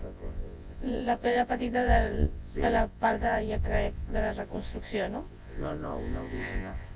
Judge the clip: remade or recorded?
remade